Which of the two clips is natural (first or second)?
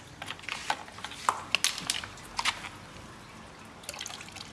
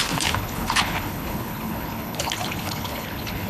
first